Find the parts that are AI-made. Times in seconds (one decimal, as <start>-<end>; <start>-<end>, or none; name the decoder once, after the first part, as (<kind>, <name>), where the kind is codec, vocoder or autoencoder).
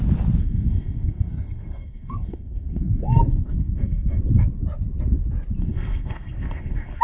0.4-4.2 (codec, SNAC); 5.6-7.0